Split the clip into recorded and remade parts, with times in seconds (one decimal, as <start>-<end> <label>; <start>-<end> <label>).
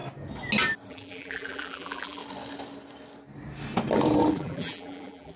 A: 0.0-0.9 recorded; 0.9-2.2 remade; 2.2-4.3 recorded; 4.3-5.4 remade